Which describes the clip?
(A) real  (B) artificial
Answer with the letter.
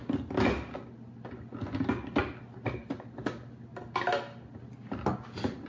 A